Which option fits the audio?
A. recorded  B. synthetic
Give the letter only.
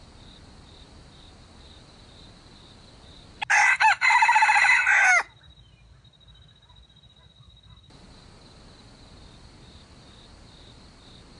A